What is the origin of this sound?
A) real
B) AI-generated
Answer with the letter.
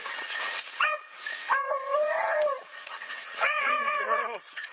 B